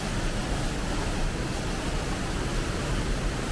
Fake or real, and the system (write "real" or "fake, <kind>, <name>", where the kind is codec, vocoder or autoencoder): real